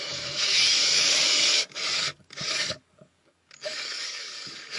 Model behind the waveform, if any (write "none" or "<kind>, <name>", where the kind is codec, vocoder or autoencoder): codec, DAC